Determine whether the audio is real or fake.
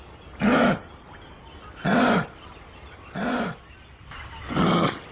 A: real